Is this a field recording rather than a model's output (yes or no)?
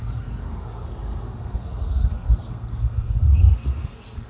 no